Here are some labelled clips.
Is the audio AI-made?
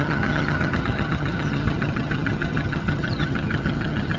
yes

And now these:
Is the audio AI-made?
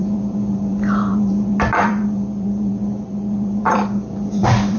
yes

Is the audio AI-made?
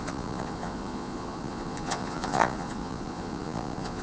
yes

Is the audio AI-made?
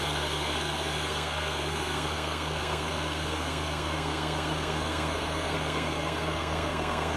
yes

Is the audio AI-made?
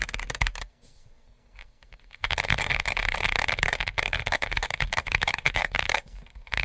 yes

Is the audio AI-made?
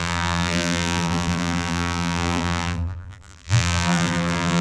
yes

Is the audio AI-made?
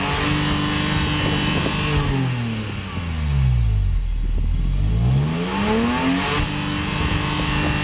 no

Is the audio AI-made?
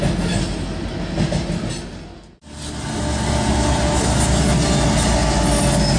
no